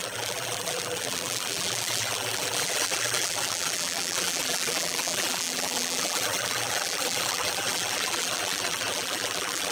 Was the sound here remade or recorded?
remade